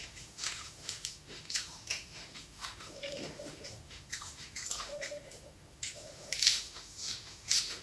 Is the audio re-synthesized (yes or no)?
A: yes